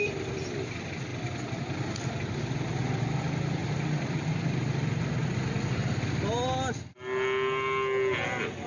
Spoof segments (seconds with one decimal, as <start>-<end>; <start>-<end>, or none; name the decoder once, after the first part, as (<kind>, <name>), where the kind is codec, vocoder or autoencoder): 3.6-6.1 (vocoder, BigVGAN v2)